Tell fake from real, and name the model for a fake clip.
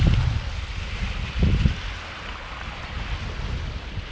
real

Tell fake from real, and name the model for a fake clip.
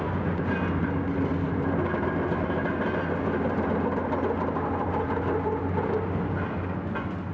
real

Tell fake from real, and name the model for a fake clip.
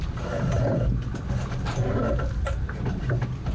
real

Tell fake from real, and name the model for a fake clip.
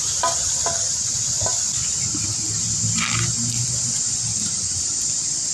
real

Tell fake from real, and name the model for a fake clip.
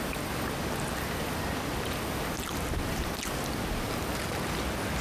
real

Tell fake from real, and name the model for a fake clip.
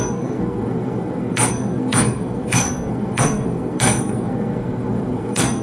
fake, codec, SNAC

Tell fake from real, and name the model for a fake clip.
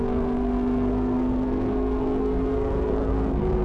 fake, codec, SNAC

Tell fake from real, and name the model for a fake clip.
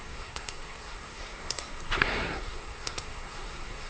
fake, codec, SNAC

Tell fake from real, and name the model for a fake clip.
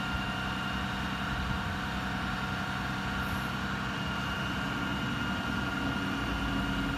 real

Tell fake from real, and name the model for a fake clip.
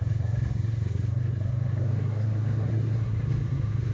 fake, codec, SNAC